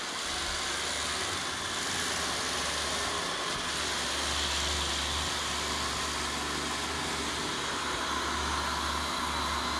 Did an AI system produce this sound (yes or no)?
no